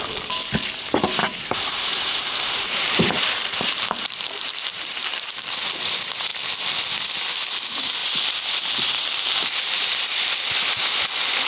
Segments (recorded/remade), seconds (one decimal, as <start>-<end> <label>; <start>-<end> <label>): 0.0-1.2 recorded; 1.2-5.5 remade; 5.5-11.5 recorded